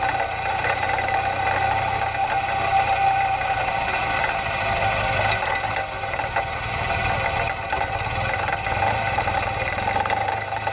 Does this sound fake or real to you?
real